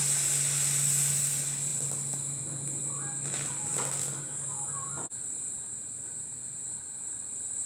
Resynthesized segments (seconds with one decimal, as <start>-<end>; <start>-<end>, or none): none